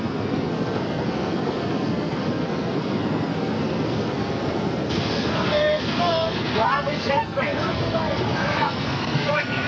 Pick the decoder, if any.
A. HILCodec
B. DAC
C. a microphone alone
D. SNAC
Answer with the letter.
D